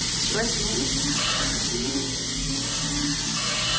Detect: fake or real real